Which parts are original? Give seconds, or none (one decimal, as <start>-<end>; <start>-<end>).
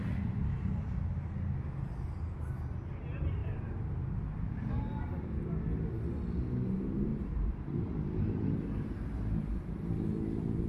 0.0-7.1; 9.9-10.7